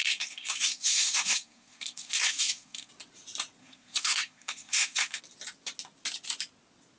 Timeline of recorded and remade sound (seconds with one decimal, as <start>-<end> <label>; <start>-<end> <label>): 0.0-2.9 remade; 2.9-3.6 recorded; 3.6-5.2 remade; 5.2-7.0 recorded